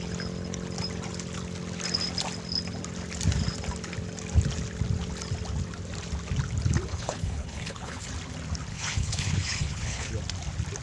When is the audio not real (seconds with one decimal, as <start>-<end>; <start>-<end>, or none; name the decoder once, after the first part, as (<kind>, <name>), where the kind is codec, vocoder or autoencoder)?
6.9-8.1 (codec, HILCodec); 8.7-10.1